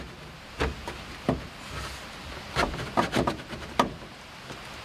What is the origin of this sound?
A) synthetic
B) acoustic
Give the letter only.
B